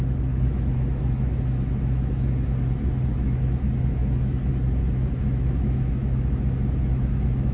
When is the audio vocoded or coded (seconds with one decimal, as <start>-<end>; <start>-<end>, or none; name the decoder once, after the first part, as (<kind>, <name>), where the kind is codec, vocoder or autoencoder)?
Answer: 0.0-7.5 (autoencoder, DAC-VAE)